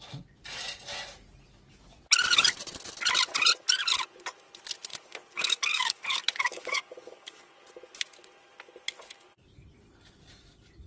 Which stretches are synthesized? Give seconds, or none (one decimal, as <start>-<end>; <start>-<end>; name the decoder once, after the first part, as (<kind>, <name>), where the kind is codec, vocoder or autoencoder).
4.9-7.5 (codec, DAC)